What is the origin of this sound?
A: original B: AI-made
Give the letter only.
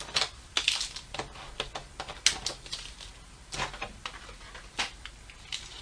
A